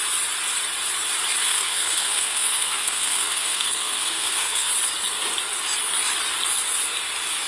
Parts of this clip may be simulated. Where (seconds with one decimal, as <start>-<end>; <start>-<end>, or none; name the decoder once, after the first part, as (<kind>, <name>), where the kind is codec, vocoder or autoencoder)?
1.4-4.7 (codec, SNAC)